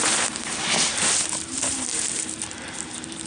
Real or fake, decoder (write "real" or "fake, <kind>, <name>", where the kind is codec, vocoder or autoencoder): fake, vocoder, BigVGAN v2